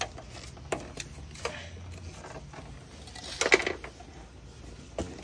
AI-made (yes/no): no